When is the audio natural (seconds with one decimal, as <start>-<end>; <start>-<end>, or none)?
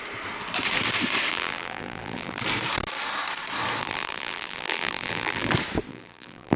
0.0-1.3; 2.4-3.8; 5.5-5.9